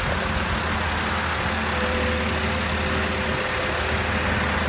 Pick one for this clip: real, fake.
real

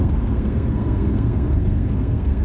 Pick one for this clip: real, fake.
fake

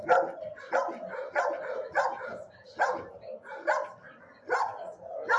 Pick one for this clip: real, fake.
real